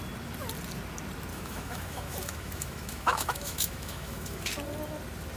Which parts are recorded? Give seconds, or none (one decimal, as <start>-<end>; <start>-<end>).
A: 0.0-1.3; 4.5-5.4